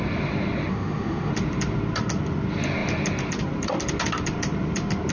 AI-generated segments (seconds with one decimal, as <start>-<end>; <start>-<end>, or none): 0.7-1.3